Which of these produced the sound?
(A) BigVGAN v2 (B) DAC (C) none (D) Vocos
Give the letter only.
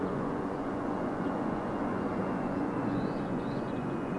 D